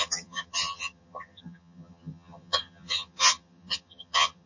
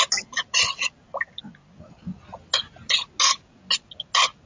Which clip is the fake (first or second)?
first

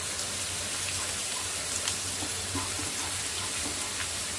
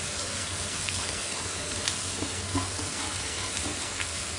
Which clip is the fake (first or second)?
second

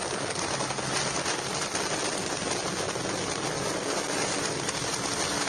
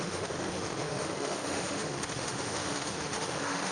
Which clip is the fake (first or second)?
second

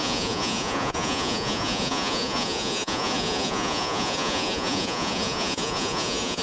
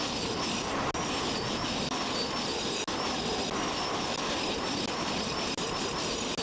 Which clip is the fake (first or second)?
first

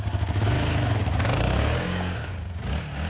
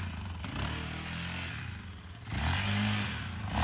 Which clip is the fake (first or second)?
first